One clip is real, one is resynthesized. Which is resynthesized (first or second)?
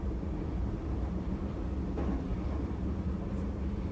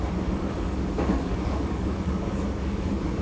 second